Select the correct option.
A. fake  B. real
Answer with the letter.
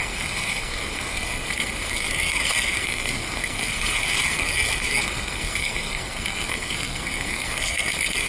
A